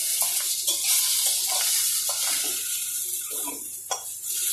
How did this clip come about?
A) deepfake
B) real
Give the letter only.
B